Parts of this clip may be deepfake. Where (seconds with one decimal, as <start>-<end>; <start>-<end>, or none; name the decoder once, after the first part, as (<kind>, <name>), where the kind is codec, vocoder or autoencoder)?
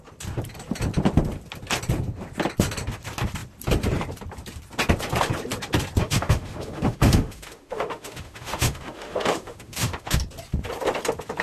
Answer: 6.0-10.2 (autoencoder, DAC-VAE)